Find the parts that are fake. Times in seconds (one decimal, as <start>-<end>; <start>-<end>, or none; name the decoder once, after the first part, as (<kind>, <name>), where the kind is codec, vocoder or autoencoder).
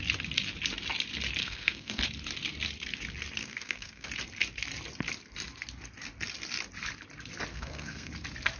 1.4-2.0 (codec, SNAC); 3.4-4.1; 7.5-8.1